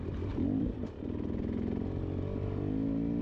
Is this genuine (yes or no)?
yes